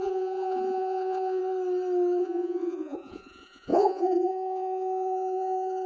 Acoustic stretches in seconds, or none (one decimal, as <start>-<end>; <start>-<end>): 1.4-2.2